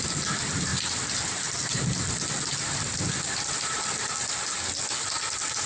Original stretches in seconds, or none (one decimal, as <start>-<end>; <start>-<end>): 0.0-5.7